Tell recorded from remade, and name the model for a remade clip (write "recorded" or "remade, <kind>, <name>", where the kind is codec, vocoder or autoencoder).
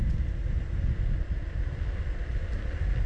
recorded